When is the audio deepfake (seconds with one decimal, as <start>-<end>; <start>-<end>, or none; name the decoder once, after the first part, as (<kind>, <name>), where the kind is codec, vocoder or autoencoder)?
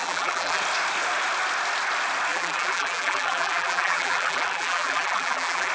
0.0-0.6 (vocoder, BigVGAN v2); 2.3-5.7